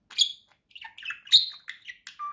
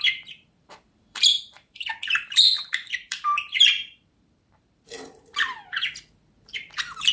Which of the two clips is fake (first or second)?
second